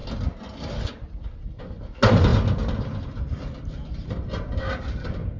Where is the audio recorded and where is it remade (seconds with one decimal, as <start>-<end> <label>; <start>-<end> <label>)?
0.0-5.4 recorded